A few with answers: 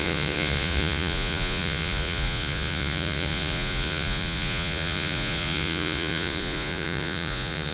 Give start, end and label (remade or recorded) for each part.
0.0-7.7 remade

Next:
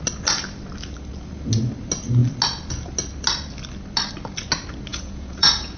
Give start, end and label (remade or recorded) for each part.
0.0-4.9 recorded; 4.9-5.8 remade

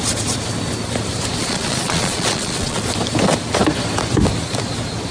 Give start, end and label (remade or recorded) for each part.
0.0-1.4 recorded; 1.4-2.8 remade; 2.8-5.1 recorded

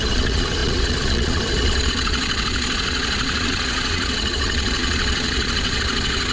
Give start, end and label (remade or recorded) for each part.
0.0-6.3 remade

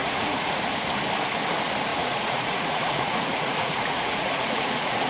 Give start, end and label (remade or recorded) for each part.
0.0-0.6 remade; 0.6-1.9 recorded; 1.9-5.1 remade

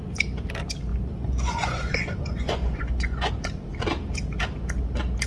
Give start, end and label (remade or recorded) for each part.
0.0-0.9 recorded; 0.9-3.3 remade; 3.3-5.3 recorded

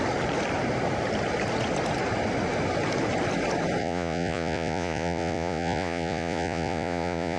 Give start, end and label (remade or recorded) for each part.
0.0-3.8 recorded; 3.8-7.4 remade

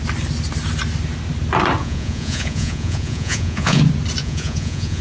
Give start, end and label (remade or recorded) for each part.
0.0-1.8 recorded; 1.8-3.8 remade; 3.8-4.2 recorded; 4.2-5.0 remade